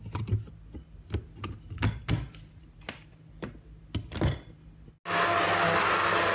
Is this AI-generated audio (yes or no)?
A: no